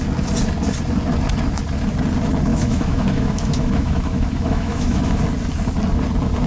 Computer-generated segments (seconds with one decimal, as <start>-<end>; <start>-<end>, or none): 2.5-5.2